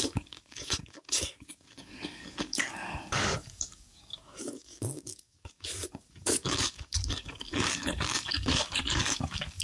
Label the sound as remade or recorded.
remade